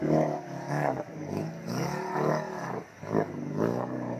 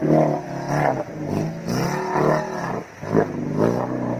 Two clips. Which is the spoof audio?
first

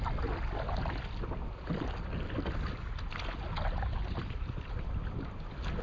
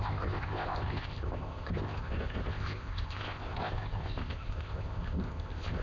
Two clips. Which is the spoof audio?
second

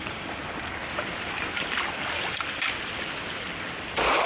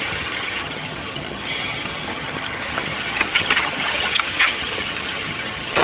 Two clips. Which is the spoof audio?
second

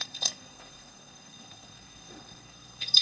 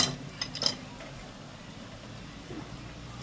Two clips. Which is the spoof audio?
first